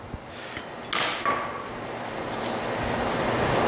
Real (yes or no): yes